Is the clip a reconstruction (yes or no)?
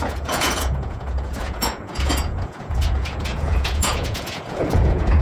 yes